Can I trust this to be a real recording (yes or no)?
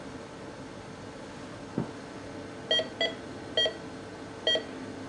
yes